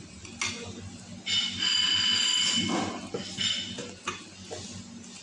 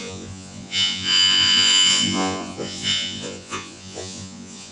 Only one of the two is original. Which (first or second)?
first